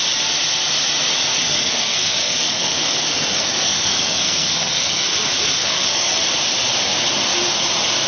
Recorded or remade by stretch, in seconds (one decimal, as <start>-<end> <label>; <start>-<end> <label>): 0.0-1.3 recorded; 1.3-6.2 remade; 6.2-8.1 recorded